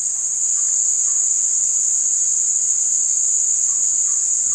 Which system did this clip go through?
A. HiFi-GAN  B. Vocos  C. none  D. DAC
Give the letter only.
C